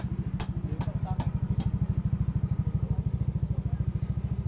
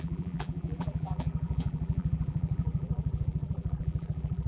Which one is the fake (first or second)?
second